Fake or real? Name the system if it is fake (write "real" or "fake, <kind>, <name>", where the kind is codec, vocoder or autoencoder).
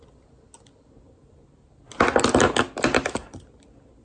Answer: real